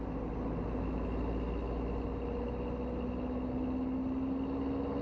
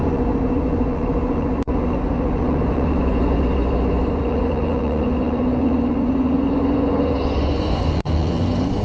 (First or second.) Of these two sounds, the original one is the first